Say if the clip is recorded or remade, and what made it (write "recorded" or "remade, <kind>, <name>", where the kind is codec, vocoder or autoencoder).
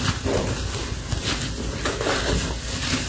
recorded